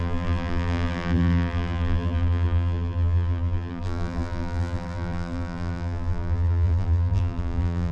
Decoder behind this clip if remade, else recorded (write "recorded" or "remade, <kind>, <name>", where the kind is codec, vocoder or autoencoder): remade, vocoder, BigVGAN v2